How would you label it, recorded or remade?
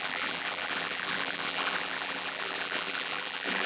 remade